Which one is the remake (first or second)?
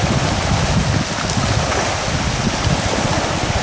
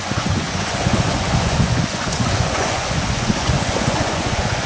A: second